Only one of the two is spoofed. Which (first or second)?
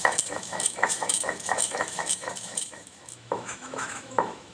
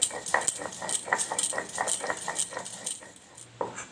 first